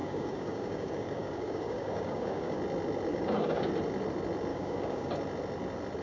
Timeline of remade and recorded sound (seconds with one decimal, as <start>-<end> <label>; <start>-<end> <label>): 0.0-2.6 remade; 2.6-3.1 recorded; 3.1-3.7 remade; 3.7-4.5 recorded; 4.5-5.1 remade; 5.1-6.0 recorded